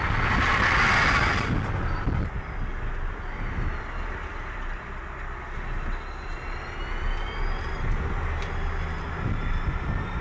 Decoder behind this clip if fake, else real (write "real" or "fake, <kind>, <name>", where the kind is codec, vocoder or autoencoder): real